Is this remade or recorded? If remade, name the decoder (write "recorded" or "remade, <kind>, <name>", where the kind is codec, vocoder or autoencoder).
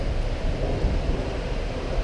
recorded